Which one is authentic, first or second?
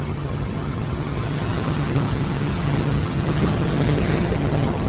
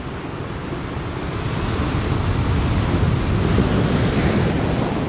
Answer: second